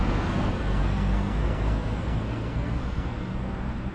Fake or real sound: fake